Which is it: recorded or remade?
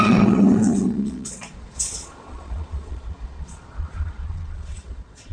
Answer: remade